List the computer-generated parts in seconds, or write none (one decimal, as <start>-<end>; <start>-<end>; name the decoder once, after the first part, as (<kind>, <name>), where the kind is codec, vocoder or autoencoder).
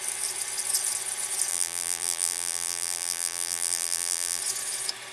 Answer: 1.5-4.4 (vocoder, BigVGAN v2)